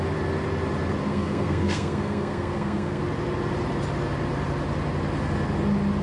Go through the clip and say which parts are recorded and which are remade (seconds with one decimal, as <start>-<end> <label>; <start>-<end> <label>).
0.0-1.1 recorded; 1.1-3.0 remade; 3.0-6.0 recorded

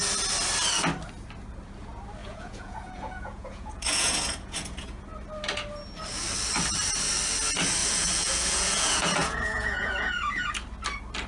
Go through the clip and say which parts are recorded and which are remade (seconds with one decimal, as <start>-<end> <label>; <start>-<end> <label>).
0.0-2.2 recorded; 2.2-5.0 remade; 5.0-7.8 recorded; 7.8-10.5 remade; 10.5-11.3 recorded

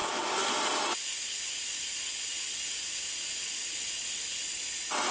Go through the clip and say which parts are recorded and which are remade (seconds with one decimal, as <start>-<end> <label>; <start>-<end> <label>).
0.0-5.1 recorded

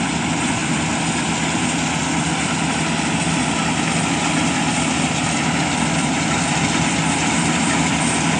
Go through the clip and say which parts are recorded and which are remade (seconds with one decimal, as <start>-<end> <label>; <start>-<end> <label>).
0.0-8.4 recorded

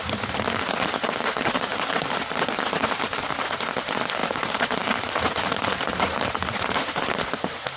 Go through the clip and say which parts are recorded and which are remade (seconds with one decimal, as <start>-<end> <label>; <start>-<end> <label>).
0.0-1.7 recorded; 1.7-2.5 remade; 2.5-4.2 recorded; 4.2-7.3 remade; 7.3-7.8 recorded

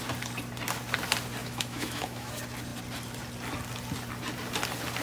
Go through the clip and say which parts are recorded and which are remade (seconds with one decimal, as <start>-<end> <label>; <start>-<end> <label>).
0.0-1.4 recorded; 1.4-2.3 remade; 2.3-5.0 recorded